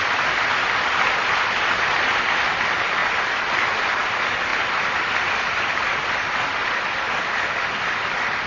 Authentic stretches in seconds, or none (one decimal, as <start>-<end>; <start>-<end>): 0.0-8.5